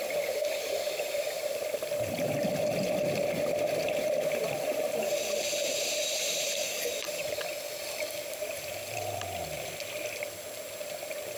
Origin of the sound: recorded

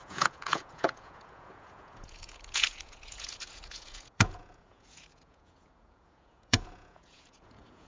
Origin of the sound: remade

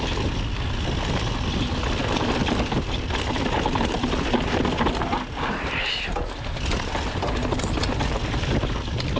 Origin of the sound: recorded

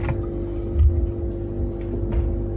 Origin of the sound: recorded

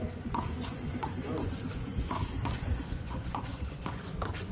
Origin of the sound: remade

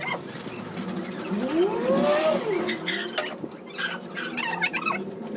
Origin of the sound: recorded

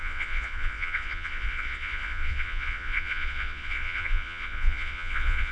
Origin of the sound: remade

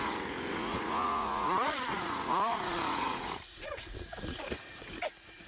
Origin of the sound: remade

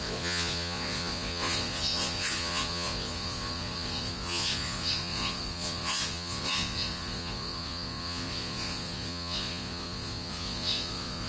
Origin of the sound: remade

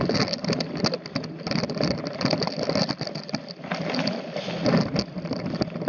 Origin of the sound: recorded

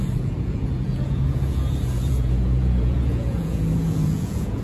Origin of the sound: remade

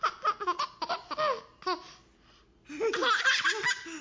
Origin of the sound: recorded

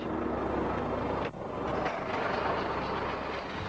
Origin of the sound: recorded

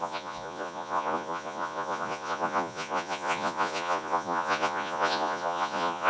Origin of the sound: remade